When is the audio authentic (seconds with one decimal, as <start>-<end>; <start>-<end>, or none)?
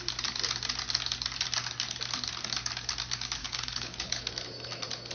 0.0-3.4; 4.3-5.1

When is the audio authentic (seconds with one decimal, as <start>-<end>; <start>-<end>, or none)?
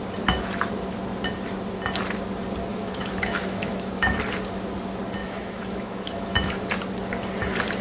0.0-2.7; 4.2-5.2; 6.7-7.8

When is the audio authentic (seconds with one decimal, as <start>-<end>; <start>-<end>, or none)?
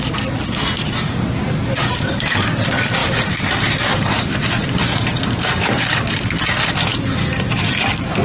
0.0-3.0; 6.1-8.2